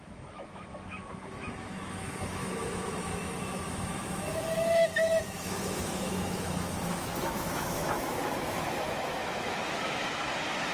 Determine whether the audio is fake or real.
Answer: fake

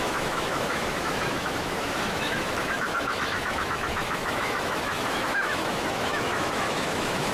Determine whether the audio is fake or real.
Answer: fake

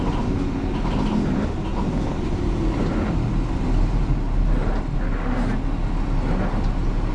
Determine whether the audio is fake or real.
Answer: real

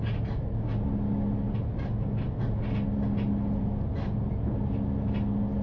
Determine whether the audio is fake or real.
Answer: real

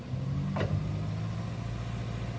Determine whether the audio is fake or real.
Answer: real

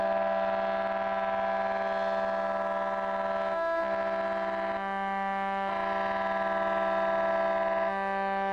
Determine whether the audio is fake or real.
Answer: real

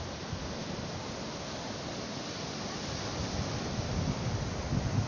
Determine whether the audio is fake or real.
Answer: real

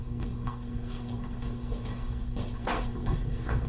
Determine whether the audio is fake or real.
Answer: fake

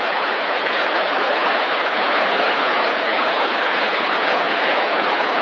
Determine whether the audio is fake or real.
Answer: fake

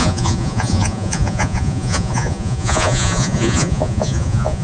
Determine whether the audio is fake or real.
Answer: fake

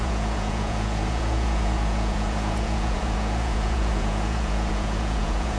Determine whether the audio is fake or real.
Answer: fake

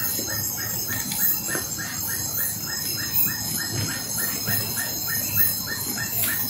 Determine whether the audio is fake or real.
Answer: real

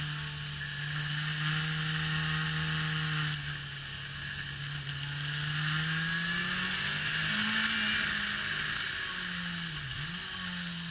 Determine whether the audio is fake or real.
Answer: real